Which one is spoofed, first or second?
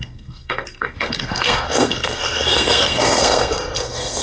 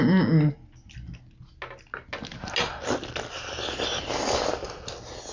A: first